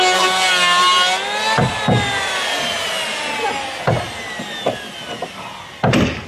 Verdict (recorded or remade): recorded